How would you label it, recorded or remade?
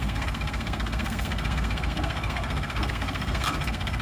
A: remade